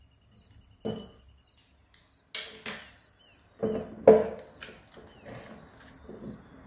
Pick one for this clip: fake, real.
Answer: real